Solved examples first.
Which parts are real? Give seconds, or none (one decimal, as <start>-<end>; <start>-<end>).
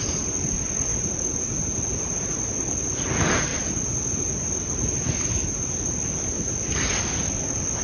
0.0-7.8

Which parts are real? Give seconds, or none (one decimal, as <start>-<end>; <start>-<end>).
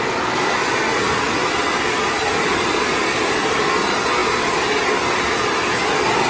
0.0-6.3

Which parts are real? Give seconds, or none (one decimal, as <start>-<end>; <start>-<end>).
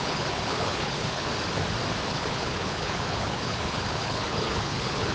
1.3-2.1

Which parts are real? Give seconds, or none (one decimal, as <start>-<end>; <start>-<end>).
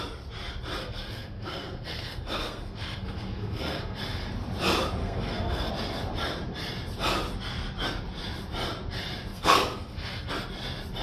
0.0-0.8; 4.0-5.0; 5.7-9.3; 10.3-11.0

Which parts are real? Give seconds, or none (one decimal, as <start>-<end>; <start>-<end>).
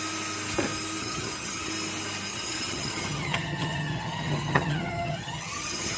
0.0-1.0; 1.7-2.3